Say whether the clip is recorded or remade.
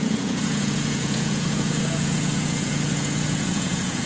remade